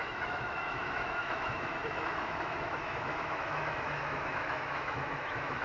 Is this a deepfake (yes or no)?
yes